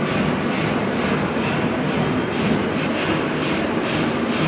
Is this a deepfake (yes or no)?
no